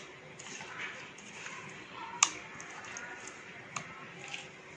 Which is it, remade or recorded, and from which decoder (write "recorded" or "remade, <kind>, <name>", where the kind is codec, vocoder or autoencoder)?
recorded